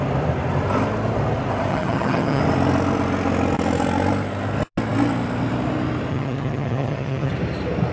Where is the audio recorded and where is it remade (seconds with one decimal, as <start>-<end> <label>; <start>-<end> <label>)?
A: 0.0-1.7 recorded; 1.7-2.4 remade; 2.4-6.1 recorded; 6.1-7.3 remade; 7.3-7.9 recorded